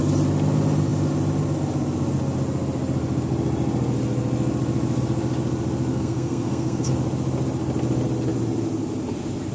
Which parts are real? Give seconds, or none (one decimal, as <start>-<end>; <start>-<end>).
0.0-5.9; 6.9-9.5